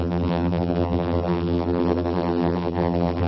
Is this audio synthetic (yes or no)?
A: yes